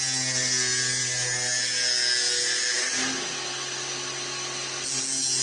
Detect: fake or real real